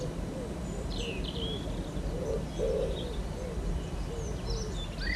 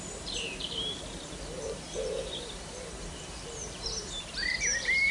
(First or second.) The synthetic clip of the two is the second